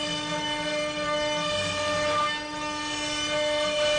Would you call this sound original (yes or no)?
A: yes